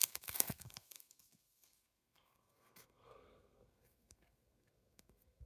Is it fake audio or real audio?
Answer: fake